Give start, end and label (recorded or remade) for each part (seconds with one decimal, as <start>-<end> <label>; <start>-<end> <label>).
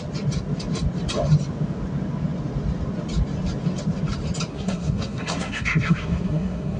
0.0-4.5 recorded; 4.5-6.8 remade